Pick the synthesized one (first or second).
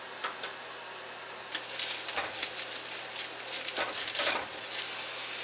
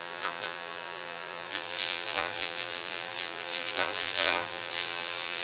second